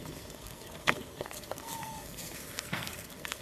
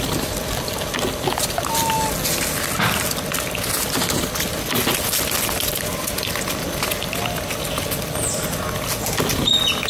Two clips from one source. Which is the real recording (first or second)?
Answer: second